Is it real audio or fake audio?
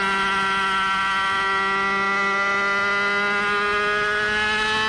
real